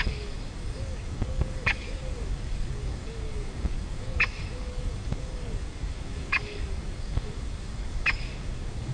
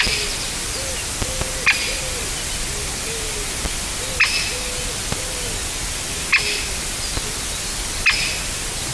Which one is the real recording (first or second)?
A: second